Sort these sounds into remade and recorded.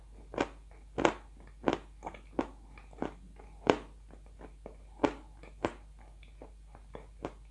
recorded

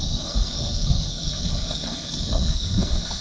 remade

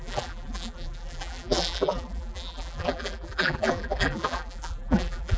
remade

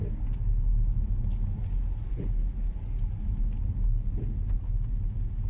recorded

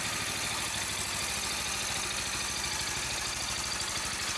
recorded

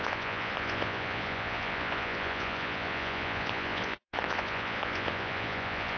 remade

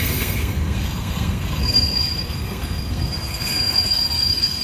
remade